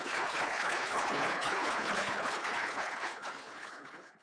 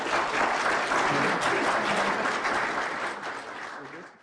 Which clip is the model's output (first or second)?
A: first